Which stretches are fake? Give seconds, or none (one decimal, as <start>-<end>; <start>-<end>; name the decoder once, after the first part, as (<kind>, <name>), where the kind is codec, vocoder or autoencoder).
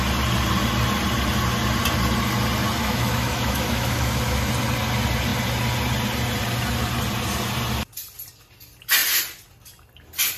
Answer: 2.8-4.5 (autoencoder, DAC-VAE)